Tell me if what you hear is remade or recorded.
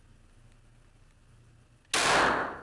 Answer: recorded